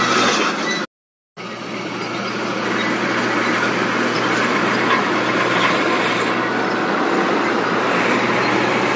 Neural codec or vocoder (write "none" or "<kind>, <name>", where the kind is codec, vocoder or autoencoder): none